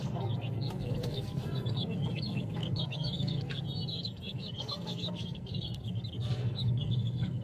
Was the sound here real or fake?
fake